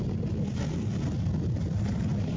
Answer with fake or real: real